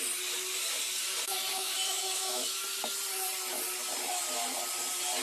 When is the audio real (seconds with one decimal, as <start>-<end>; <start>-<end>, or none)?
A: 0.0-1.5; 2.6-5.2